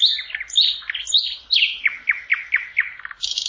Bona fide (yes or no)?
yes